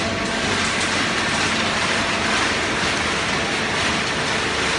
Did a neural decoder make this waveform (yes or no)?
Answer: no